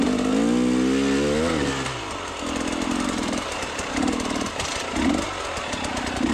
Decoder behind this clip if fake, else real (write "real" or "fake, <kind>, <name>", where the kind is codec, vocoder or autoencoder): real